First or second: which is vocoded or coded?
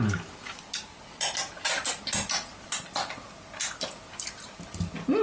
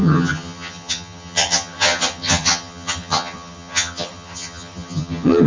second